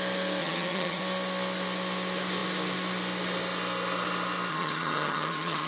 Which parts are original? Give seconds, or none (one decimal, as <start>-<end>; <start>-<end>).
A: 0.0-0.4; 1.0-4.5